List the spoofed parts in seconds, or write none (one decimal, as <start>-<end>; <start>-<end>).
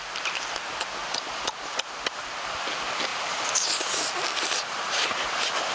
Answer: none